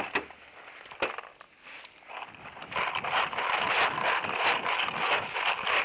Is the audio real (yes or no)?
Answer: yes